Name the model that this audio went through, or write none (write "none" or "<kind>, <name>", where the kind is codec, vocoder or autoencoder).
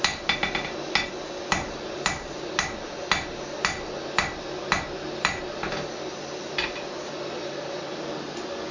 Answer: none